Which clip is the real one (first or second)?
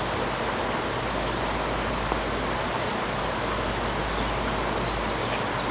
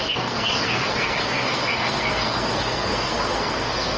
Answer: first